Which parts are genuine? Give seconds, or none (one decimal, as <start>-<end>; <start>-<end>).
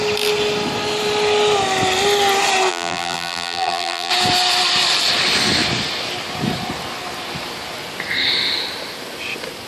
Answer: 0.0-2.7; 4.1-9.7